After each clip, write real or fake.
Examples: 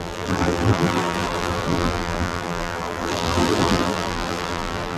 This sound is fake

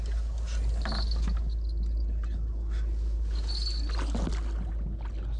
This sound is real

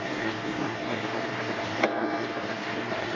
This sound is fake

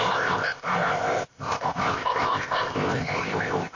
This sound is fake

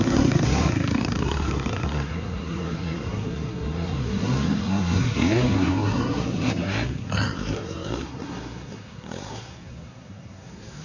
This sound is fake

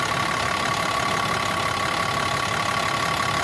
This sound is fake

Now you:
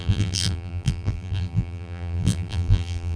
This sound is fake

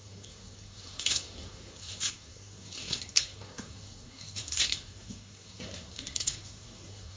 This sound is fake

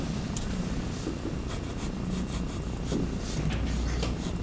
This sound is real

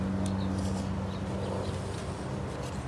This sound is real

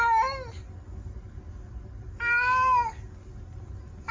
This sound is real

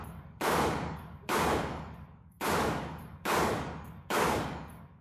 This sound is fake